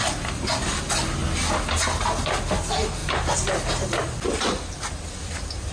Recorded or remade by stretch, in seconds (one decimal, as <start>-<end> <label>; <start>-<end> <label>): 0.0-5.7 recorded